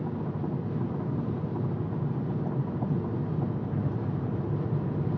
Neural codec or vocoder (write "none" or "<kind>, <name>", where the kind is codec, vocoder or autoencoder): none